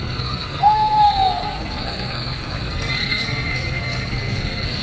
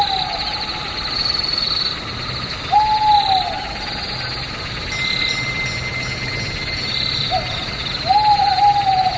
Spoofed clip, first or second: first